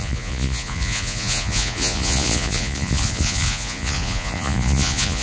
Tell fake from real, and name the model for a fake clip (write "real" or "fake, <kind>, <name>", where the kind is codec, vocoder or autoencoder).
fake, vocoder, Vocos